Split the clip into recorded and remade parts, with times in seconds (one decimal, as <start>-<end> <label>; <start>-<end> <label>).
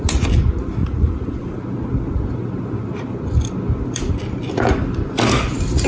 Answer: 0.0-0.8 recorded; 0.8-1.6 remade; 1.6-5.9 recorded